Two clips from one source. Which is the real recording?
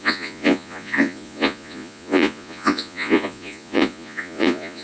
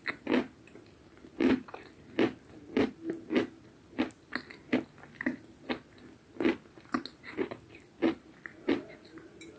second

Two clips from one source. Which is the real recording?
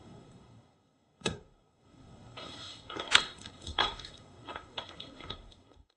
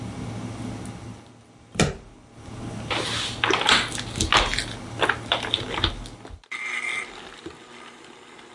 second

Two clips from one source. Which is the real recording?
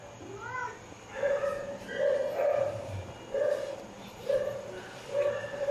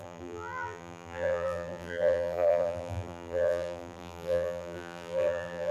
first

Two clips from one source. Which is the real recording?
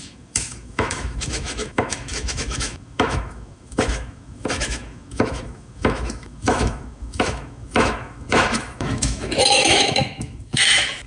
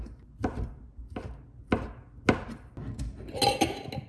second